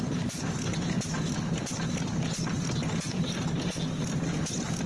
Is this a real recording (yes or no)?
yes